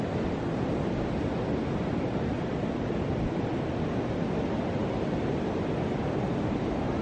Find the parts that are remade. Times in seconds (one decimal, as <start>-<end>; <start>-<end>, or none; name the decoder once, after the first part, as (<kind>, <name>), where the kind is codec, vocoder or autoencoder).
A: none

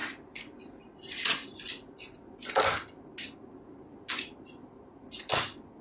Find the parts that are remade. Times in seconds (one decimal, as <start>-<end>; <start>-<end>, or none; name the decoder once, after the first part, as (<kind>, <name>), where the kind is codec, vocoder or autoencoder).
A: none

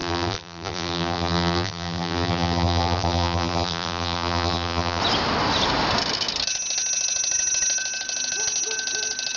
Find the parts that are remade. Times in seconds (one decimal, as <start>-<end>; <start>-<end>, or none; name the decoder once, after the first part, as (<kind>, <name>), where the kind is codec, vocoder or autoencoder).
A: 0.0-5.0 (vocoder, BigVGAN v2)